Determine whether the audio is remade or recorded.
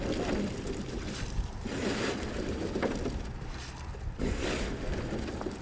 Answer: recorded